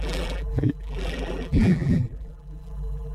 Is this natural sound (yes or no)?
no